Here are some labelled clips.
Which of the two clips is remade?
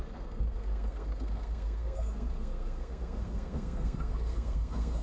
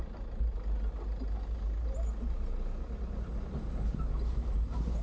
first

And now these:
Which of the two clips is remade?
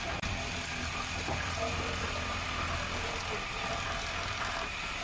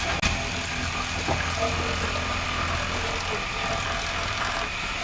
first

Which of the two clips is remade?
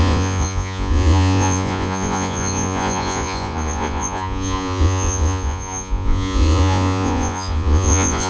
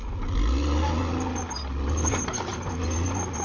first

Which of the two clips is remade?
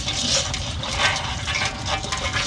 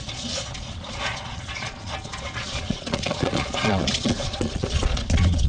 second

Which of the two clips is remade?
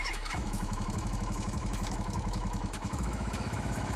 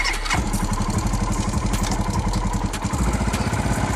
first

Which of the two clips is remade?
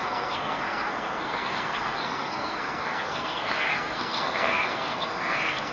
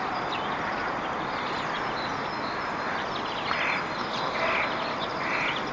first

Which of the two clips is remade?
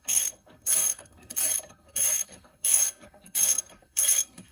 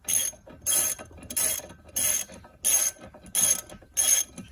first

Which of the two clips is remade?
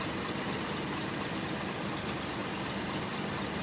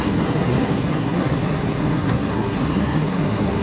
second